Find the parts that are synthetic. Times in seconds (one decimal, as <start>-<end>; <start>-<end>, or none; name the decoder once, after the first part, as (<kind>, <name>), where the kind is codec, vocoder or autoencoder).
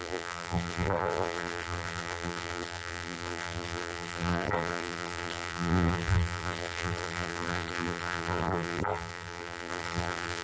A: 0.0-10.4 (vocoder, BigVGAN v2)